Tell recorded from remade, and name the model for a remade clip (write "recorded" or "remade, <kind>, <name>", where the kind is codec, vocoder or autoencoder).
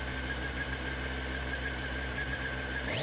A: recorded